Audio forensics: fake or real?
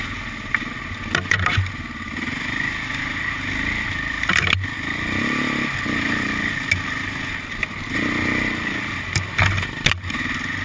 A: real